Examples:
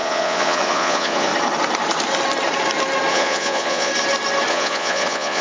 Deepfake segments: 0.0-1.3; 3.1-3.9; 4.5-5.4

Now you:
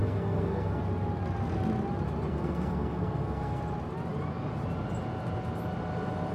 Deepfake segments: 0.0-0.8; 2.3-3.6

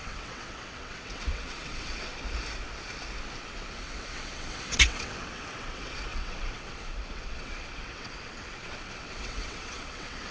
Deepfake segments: 0.0-2.1; 3.4-10.3

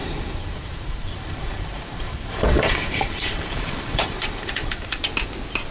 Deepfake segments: 0.0-5.0